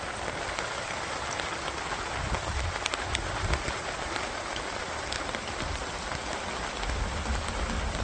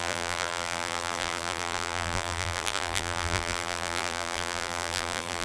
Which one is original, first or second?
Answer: first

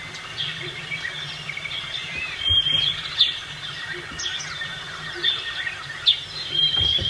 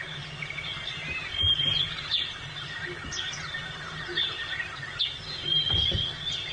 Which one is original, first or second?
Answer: second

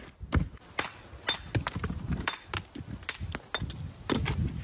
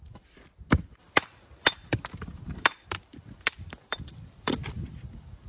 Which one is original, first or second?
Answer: first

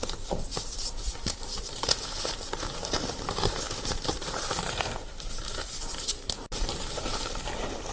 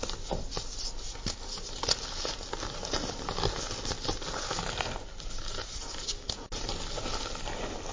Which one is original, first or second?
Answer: second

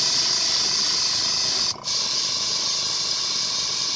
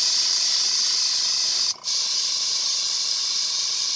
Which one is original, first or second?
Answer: first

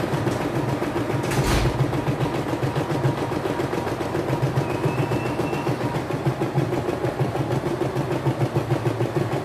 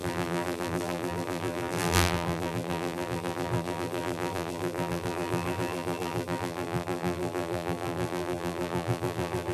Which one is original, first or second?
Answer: first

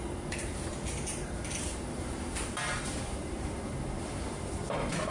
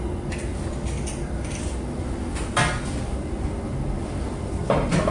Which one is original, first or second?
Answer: second